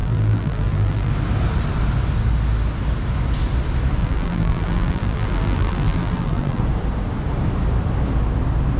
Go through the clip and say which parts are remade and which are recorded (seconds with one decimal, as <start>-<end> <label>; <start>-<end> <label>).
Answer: 0.0-1.1 remade; 1.1-4.0 recorded; 4.0-6.6 remade; 6.6-8.8 recorded